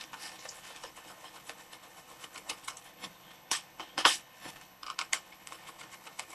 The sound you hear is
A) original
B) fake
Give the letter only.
B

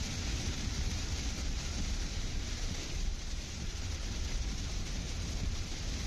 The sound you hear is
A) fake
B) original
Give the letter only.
A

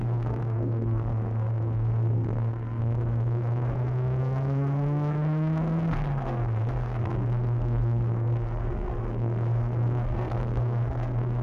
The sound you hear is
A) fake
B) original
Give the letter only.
A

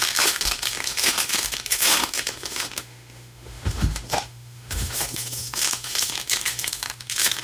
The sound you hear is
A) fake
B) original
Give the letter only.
A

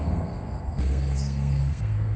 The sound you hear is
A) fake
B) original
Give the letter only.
A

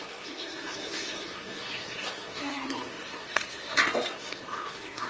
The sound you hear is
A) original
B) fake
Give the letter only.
B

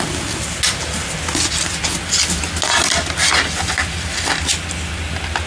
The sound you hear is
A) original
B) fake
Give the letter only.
A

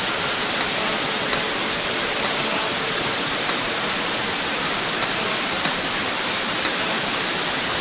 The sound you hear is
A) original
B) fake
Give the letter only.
A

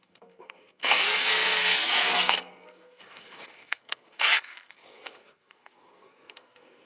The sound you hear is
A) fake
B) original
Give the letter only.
A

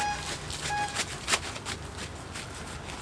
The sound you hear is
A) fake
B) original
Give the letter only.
B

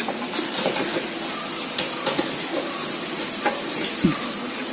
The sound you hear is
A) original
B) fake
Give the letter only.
A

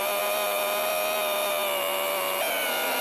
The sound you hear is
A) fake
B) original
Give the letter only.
B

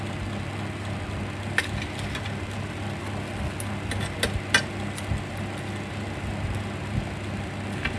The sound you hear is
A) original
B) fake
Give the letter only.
A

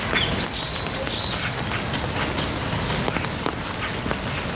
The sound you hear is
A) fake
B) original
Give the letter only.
B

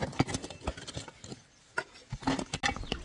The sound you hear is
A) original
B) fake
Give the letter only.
A